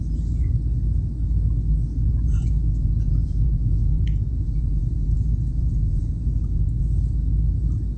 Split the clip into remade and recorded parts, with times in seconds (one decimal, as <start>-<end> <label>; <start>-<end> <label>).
0.0-2.1 recorded; 2.1-6.8 remade; 6.8-8.0 recorded